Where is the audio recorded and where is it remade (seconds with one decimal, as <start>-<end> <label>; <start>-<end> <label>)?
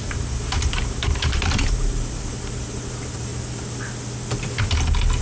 0.0-3.3 remade; 3.3-5.2 recorded